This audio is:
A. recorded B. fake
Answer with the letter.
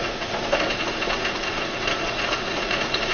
B